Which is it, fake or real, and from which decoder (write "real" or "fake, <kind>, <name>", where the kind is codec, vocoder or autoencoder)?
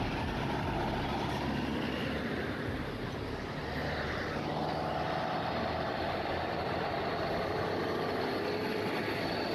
real